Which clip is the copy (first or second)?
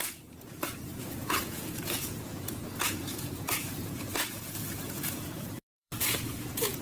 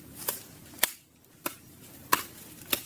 first